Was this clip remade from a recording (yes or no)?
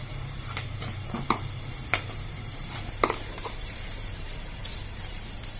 yes